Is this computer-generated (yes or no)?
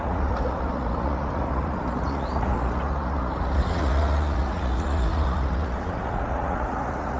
yes